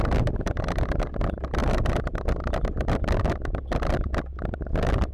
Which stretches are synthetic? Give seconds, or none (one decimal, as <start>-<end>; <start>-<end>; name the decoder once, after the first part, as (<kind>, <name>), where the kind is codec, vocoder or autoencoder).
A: none